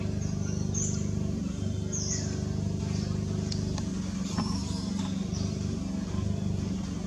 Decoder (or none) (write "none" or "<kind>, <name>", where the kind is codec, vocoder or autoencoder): none